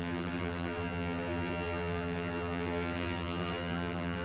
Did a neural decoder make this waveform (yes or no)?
yes